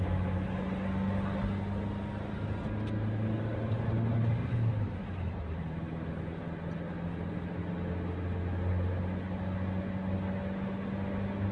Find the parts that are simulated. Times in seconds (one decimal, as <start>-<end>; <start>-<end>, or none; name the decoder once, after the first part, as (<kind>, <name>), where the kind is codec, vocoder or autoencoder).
4.4-6.2 (vocoder, BigVGAN v2)